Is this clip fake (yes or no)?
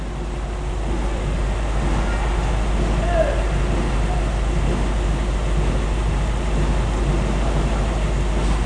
no